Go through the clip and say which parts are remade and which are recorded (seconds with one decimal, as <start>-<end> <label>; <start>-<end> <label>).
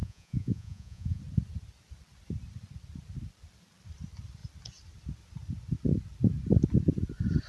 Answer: 0.0-1.2 remade; 1.2-7.5 recorded